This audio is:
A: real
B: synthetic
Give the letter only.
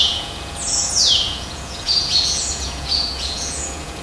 B